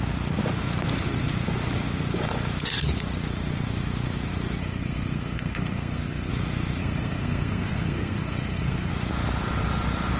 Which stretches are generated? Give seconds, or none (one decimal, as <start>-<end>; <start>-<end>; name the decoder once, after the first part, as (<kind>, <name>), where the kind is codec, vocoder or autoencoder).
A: 4.6-6.3 (codec, SNAC); 6.8-8.9